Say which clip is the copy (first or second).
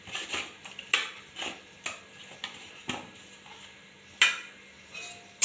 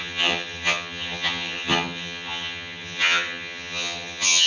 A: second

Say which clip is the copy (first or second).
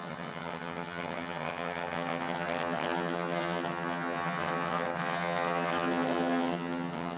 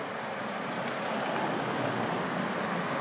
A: first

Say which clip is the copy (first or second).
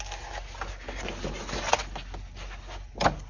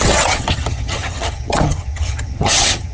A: second